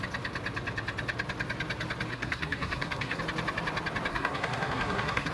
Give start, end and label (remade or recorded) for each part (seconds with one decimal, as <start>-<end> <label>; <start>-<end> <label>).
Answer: 0.0-2.1 recorded; 2.1-3.2 remade; 3.2-4.1 recorded; 4.1-5.3 remade